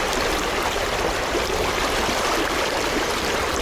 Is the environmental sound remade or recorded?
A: remade